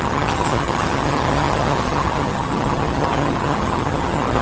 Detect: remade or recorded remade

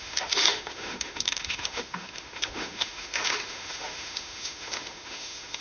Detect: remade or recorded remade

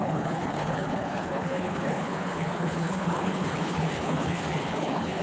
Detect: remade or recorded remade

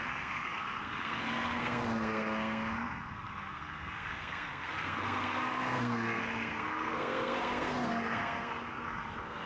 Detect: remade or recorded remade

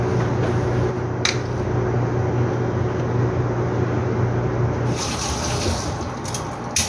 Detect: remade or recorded recorded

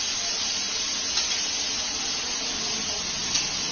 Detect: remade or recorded recorded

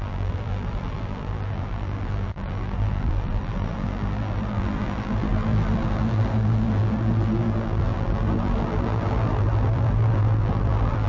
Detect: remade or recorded remade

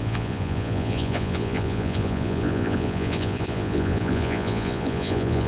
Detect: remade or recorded remade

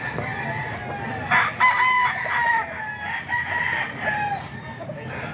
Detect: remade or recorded recorded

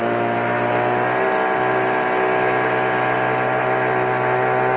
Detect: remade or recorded recorded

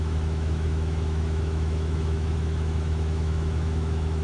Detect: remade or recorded remade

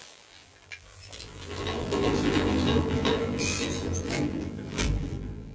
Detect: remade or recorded remade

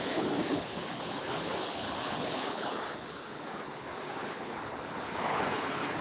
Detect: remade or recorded remade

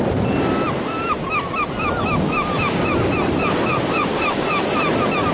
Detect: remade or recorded recorded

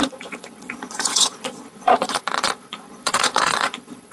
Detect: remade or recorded remade